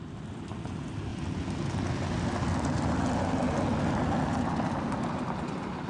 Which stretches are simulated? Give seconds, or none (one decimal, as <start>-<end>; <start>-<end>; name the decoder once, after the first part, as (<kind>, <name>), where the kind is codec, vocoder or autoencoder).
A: none